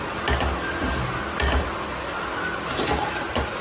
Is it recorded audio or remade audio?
recorded